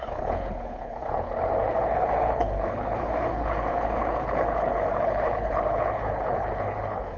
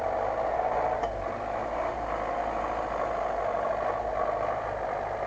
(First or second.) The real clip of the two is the second